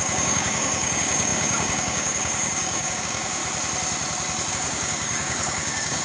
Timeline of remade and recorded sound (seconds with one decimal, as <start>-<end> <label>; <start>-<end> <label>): 0.0-3.4 remade; 3.4-4.5 recorded; 4.5-6.0 remade